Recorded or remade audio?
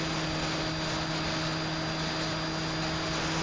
recorded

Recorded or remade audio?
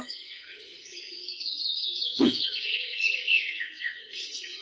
remade